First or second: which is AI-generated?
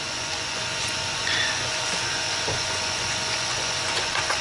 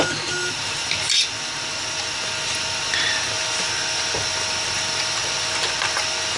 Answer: first